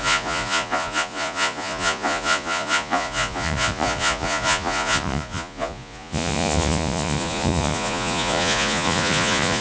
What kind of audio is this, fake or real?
fake